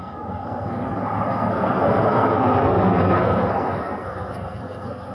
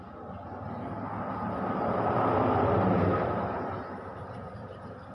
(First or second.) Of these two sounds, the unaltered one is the second